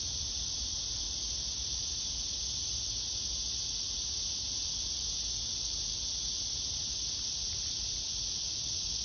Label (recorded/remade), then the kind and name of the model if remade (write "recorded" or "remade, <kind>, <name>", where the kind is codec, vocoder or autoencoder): remade, vocoder, BigVGAN v2